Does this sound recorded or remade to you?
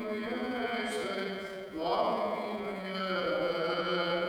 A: remade